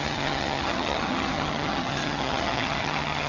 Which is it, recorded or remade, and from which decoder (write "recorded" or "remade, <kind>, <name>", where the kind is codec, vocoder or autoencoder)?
remade, vocoder, HiFi-GAN